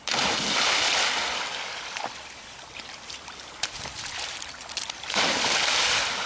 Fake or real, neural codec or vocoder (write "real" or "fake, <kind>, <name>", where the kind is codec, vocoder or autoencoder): fake, vocoder, BigVGAN v2